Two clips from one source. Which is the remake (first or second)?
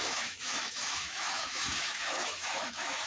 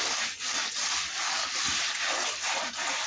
first